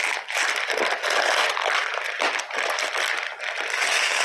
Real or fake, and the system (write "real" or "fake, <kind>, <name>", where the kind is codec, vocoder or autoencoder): real